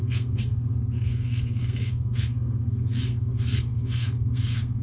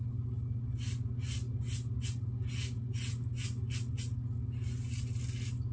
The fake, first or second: first